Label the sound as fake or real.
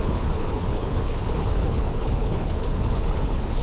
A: fake